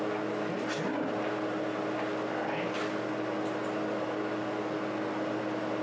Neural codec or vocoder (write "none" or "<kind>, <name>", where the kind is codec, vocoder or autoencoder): none